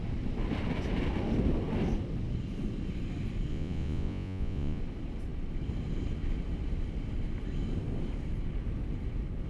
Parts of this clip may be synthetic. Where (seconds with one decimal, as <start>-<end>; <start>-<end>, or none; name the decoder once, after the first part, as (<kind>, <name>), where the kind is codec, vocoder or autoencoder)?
3.5-4.8 (vocoder, Vocos)